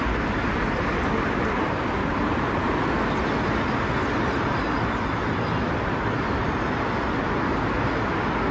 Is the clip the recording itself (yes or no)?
yes